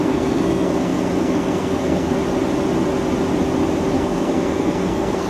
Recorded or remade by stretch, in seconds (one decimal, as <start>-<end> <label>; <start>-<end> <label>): 0.0-2.2 remade; 2.2-3.9 recorded; 3.9-5.3 remade